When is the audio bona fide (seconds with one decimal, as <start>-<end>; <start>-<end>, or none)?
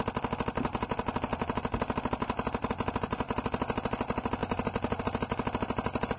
0.0-1.3; 2.7-6.2